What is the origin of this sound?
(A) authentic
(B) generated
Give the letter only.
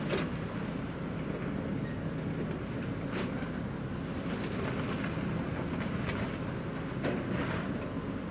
A